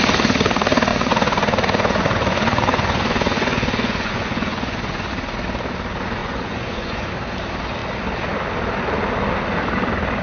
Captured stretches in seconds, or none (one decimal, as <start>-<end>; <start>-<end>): 0.0-0.9; 5.1-6.2; 7.1-10.2